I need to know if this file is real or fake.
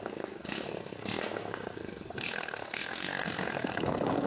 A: fake